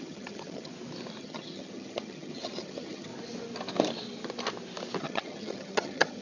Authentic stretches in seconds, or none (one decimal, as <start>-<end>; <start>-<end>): 0.7-1.2; 3.1-5.0

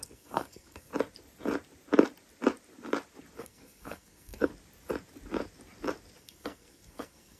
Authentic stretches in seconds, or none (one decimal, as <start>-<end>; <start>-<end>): 0.9-3.4; 4.5-6.2

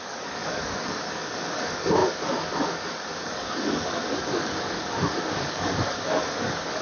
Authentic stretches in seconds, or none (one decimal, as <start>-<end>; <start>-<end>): none

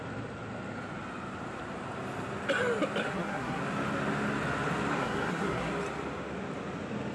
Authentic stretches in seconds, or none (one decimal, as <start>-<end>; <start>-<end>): 0.0-3.0; 3.6-4.9; 5.7-7.1

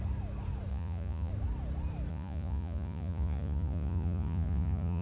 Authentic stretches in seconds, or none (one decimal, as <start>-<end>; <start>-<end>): 0.0-0.7; 1.3-2.1

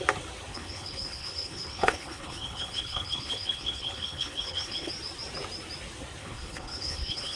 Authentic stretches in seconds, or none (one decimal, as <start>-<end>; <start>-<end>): 0.0-0.5; 4.9-6.2

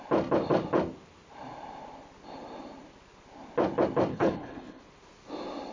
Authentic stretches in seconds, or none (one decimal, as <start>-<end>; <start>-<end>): 0.0-4.1; 4.8-5.7

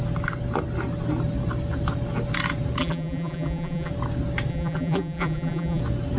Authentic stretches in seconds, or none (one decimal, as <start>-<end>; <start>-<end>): 0.0-2.8; 3.9-4.5; 5.8-6.2